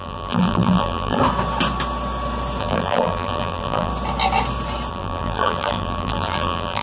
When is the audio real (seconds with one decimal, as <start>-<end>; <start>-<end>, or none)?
1.2-2.6; 3.9-4.9